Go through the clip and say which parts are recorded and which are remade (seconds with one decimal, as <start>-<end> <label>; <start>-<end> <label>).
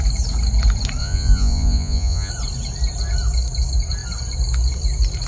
0.0-1.0 recorded; 1.0-2.3 remade; 2.3-5.3 recorded